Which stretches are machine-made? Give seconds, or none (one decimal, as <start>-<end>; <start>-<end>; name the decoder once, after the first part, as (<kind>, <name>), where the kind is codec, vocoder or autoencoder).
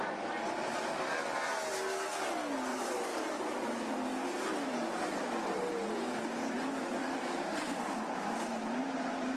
2.7-3.3 (vocoder, BigVGAN v2); 7.0-9.4